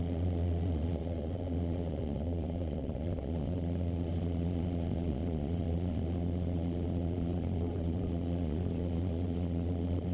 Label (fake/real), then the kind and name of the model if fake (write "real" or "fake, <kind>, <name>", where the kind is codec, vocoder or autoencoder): fake, vocoder, Vocos